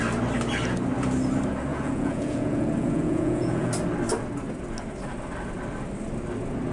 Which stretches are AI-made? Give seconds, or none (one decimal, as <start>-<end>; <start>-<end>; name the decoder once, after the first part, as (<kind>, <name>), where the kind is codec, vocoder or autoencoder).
1.7-3.7 (vocoder, Vocos)